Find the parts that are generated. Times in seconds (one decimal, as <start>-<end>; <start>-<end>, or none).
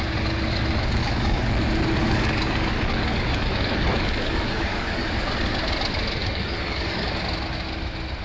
1.0-1.5; 2.0-5.1; 6.2-7.2